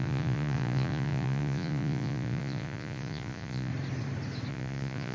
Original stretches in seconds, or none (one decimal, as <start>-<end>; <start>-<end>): 3.7-4.5